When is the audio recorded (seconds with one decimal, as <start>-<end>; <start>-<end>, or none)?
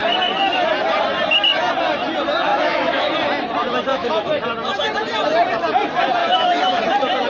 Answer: 0.0-2.5; 3.1-3.9; 4.4-6.2; 6.8-7.3